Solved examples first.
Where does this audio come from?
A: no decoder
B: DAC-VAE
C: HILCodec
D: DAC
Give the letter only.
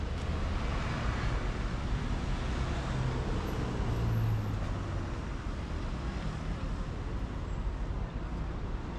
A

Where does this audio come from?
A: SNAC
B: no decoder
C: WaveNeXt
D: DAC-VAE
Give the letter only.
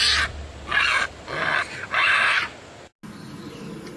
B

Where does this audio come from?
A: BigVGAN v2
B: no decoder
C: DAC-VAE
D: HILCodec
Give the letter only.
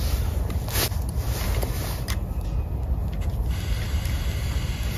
B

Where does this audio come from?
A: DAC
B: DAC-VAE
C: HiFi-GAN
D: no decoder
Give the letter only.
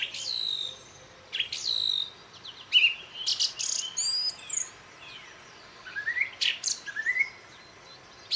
D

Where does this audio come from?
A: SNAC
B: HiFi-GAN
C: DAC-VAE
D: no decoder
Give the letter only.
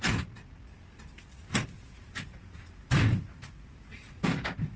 D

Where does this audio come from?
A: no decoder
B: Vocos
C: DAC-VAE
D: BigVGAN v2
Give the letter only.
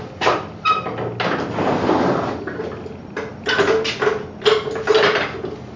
A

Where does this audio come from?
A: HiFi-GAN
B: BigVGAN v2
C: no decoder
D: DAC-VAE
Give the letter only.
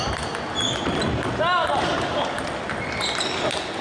C